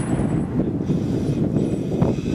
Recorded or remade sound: recorded